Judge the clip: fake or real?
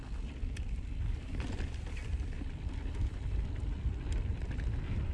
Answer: fake